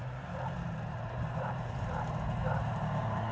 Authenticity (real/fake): fake